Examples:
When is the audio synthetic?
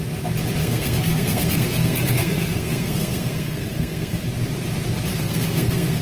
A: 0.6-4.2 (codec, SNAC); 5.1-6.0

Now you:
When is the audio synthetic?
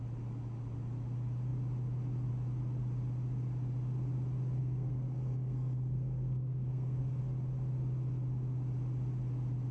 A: 4.6-7.2 (codec, SNAC)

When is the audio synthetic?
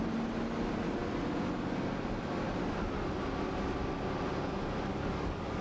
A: 4.9-5.6 (codec, DAC)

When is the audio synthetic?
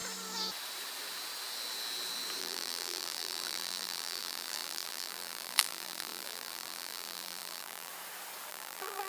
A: 2.4-7.9 (vocoder, BigVGAN v2); 8.5-9.1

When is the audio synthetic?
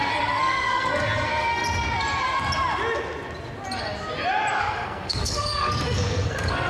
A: 0.0-1.6 (codec, SNAC); 4.6-6.7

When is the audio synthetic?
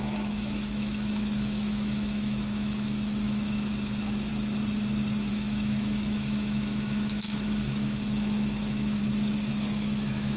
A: 0.0-4.3 (autoencoder, DAC-VAE); 5.3-9.0; 9.5-10.4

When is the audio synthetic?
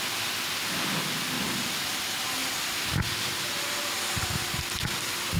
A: none